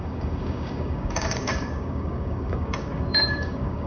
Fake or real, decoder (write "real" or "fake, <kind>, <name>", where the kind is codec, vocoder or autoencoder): fake, codec, DAC